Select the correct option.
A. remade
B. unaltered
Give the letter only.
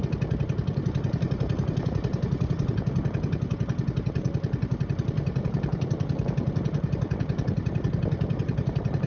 B